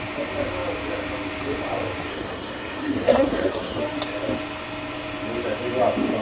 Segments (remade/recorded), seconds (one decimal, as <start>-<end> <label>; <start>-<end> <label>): 0.0-2.1 recorded; 2.1-3.8 remade; 3.8-6.2 recorded